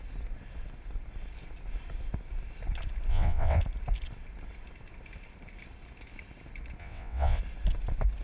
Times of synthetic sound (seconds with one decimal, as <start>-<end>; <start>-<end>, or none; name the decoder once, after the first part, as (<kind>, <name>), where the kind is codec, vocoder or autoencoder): 3.1-3.6 (vocoder, WaveNeXt); 6.8-7.4